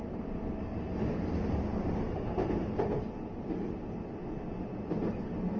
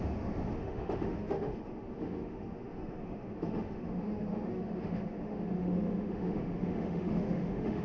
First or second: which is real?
first